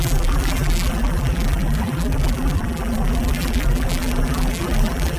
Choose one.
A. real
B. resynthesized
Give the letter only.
B